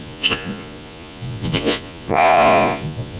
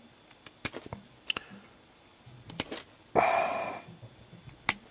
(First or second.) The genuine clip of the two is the second